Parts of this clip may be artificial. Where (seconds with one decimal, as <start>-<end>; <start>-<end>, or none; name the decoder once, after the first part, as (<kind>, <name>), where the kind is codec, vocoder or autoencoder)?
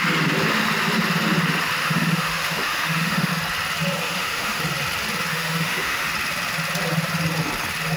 1.8-3.3 (autoencoder, DAC-VAE); 4.0-4.6; 5.3-6.1